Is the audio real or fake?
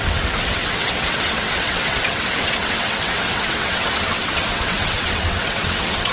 fake